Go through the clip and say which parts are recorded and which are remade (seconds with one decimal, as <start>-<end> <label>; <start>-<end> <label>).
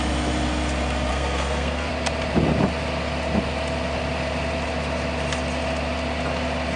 0.0-1.1 recorded; 1.1-1.9 remade; 1.9-6.8 recorded